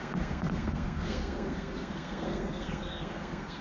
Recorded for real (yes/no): no